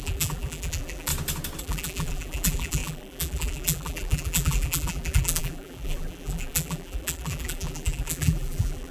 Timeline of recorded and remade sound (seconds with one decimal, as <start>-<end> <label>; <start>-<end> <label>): 0.0-1.1 remade; 1.1-1.6 recorded; 1.6-8.9 remade